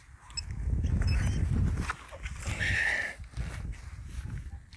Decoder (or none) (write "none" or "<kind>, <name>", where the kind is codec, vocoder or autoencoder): none